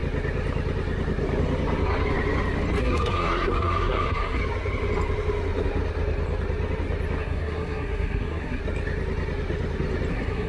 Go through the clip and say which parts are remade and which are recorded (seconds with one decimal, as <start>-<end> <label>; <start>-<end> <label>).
0.0-2.8 recorded; 2.8-4.4 remade; 4.4-7.2 recorded; 7.2-8.6 remade; 8.6-10.1 recorded; 10.1-10.5 remade